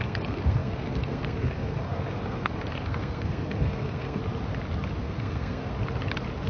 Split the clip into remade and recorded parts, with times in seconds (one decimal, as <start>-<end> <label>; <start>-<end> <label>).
0.0-4.2 remade; 4.2-5.0 recorded; 5.0-5.7 remade; 5.7-6.5 recorded